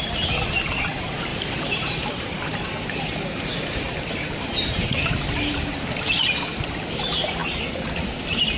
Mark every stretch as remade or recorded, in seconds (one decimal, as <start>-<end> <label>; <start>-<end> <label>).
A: 0.0-1.3 recorded; 1.3-5.7 remade; 5.7-8.6 recorded